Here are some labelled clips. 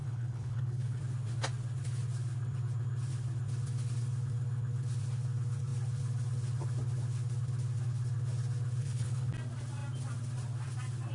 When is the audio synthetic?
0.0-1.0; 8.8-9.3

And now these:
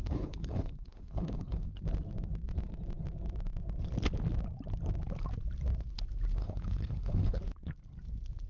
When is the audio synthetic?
0.0-1.7; 6.4-7.4

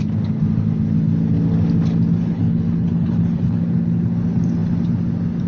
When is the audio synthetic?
2.2-3.6